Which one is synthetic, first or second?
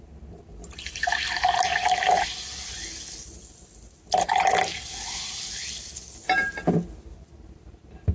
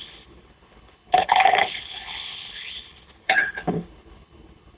second